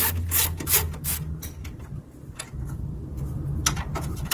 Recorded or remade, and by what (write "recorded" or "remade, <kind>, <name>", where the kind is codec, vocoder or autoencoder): recorded